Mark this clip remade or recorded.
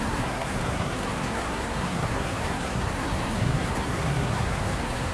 remade